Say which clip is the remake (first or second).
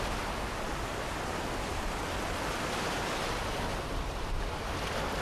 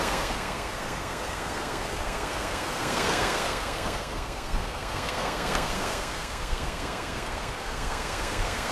second